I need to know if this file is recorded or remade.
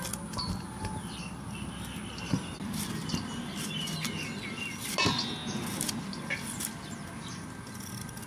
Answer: recorded